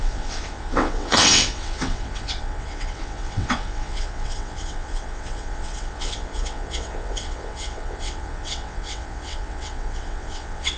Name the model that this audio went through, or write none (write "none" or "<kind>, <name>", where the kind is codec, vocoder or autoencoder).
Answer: vocoder, WaveNeXt